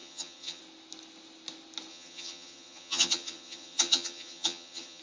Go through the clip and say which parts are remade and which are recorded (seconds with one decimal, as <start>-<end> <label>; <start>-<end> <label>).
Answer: 0.0-0.6 remade; 0.6-1.9 recorded; 1.9-5.0 remade